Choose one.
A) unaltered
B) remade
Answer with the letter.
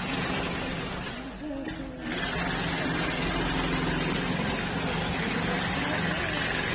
A